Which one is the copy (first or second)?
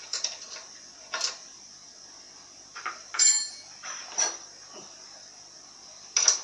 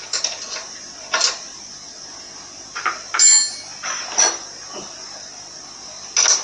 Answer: first